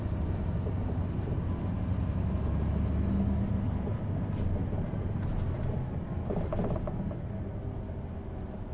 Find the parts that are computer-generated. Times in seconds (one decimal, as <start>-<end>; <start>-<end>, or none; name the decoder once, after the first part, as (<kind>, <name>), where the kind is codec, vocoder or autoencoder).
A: 4.6-5.4 (vocoder, BigVGAN v2)